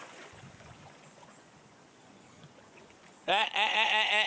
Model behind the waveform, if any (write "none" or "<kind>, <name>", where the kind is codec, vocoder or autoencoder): vocoder, Vocos